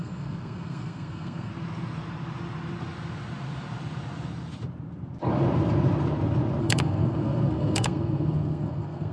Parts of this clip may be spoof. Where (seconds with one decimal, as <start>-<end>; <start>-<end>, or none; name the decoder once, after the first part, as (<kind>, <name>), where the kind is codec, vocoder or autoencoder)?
0.0-1.5 (codec, SNAC); 6.6-9.1